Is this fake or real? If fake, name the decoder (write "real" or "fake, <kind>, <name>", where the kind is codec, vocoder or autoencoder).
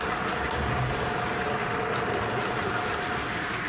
real